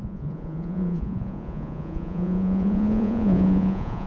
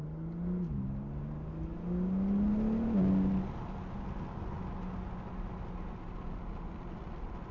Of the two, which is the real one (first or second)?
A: second